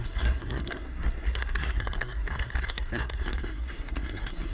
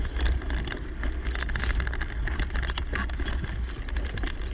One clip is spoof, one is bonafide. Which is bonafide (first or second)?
second